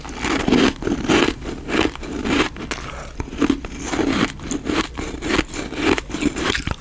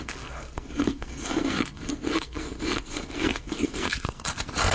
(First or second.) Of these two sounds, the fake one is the second